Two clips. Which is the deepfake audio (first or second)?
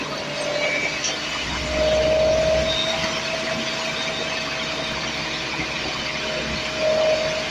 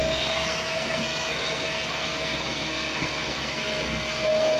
second